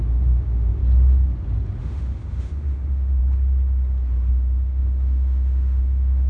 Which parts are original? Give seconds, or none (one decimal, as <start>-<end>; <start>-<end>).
0.8-1.8; 3.2-4.3